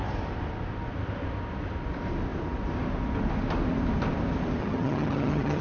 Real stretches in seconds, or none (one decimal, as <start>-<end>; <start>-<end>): 0.0-4.6